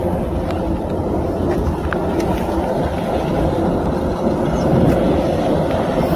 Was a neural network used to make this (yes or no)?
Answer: no